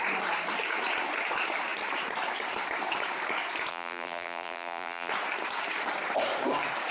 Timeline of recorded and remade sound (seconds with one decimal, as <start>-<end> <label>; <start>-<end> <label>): 0.0-3.7 recorded; 3.7-5.1 remade; 5.1-6.9 recorded

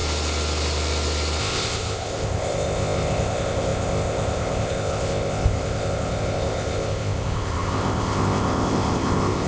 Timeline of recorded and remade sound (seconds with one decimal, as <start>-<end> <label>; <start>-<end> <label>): 0.0-1.4 recorded; 1.4-9.5 remade